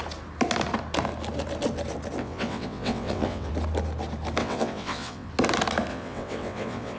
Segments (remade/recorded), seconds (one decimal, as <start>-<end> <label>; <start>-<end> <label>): 0.0-2.2 recorded; 2.2-3.5 remade; 3.5-4.4 recorded; 4.4-5.3 remade; 5.3-5.9 recorded; 5.9-7.0 remade